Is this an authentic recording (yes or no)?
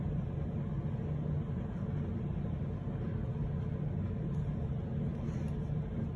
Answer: yes